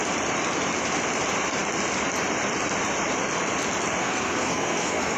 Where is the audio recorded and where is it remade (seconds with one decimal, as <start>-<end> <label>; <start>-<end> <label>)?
0.0-4.0 recorded; 4.0-5.2 remade